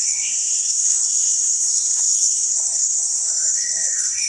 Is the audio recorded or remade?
remade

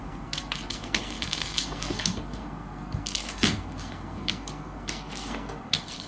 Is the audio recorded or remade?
remade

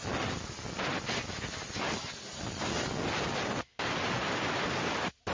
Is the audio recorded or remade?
recorded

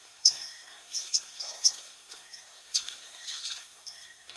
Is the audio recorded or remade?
remade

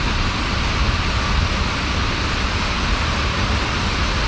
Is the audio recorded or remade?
recorded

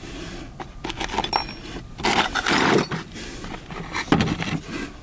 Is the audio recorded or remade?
recorded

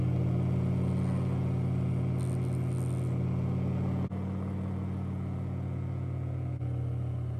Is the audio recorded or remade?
recorded